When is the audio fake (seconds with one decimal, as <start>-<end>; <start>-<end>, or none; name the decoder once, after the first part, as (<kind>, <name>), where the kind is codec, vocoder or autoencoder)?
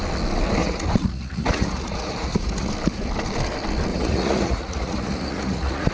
0.6-2.7 (vocoder, Vocos); 3.9-5.9